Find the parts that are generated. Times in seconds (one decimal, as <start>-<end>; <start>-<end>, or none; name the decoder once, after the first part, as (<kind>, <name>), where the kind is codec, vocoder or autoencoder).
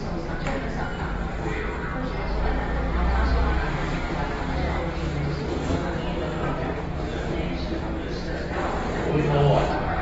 none